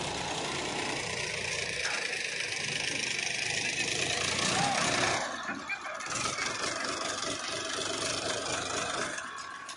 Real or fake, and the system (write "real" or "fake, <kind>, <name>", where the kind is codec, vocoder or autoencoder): real